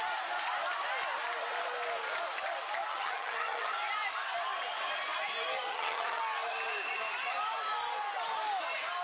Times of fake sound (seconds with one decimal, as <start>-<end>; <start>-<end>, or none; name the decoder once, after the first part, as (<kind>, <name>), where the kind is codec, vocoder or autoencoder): 2.9-3.7 (vocoder, HiFi-GAN); 5.7-6.2